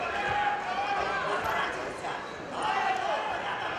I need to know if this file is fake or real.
real